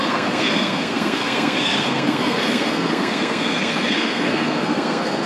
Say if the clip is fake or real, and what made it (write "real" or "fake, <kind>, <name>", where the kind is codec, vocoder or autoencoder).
fake, codec, SNAC